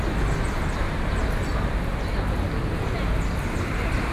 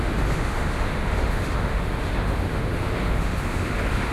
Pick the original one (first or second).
first